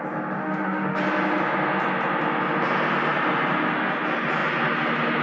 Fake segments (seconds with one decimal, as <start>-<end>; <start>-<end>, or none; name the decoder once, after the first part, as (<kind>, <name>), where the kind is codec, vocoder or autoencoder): 0.4-1.0 (autoencoder, DAC-VAE)